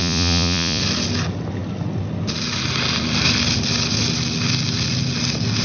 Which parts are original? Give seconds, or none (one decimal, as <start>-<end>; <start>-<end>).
0.8-5.6